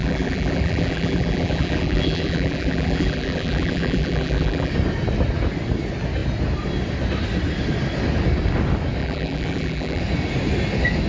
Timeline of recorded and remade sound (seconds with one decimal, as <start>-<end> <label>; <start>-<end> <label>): 0.0-4.7 remade; 4.7-9.0 recorded; 9.0-10.0 remade; 10.0-11.1 recorded